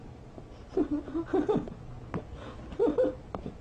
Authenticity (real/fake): real